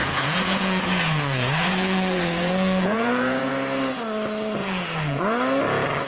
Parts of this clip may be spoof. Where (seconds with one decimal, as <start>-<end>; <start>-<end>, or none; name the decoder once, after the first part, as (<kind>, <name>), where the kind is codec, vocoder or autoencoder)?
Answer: 0.0-3.5 (vocoder, Vocos); 4.6-5.2